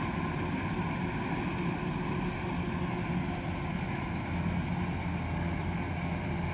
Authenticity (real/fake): real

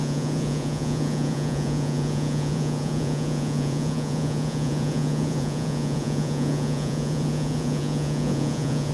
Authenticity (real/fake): fake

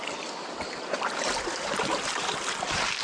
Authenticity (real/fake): real